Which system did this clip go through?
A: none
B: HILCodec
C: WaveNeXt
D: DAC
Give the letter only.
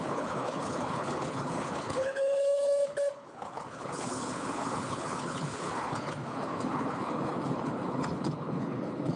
B